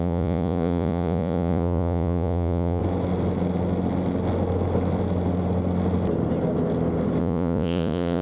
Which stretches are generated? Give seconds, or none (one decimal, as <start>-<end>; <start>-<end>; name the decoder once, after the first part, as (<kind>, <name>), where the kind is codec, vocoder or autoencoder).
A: 0.0-2.8 (vocoder, Vocos); 7.2-8.2